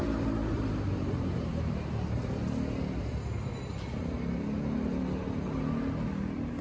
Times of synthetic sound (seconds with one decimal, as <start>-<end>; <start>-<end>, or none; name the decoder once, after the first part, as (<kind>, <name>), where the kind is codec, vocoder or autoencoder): 0.0-2.2 (vocoder, BigVGAN v2)